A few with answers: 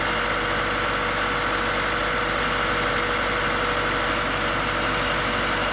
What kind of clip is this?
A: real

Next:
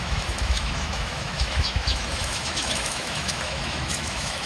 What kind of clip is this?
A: fake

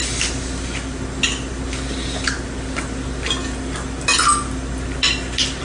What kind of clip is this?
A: real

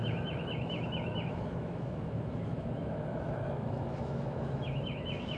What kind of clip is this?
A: fake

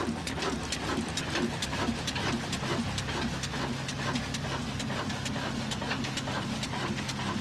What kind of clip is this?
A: real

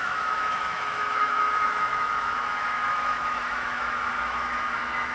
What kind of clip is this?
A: fake